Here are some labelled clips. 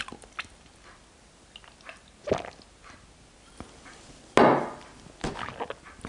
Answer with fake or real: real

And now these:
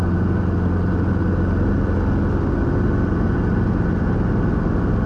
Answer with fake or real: real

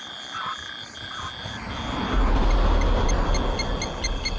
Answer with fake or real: real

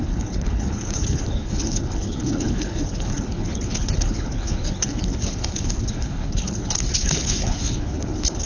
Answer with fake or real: fake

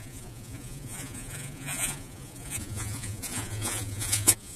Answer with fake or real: fake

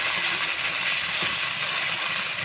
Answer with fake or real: real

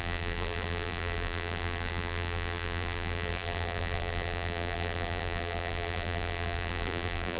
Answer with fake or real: fake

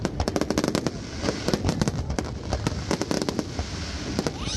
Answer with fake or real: real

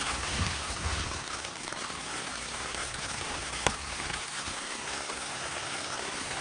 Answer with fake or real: fake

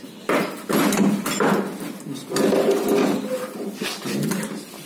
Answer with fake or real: real